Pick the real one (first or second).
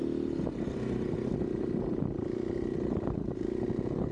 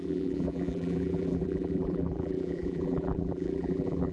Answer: first